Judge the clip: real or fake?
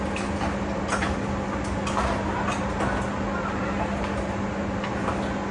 real